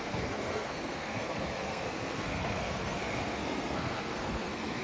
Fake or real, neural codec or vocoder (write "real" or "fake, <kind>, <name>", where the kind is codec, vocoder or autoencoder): fake, codec, SNAC